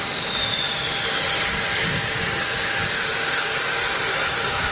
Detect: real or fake fake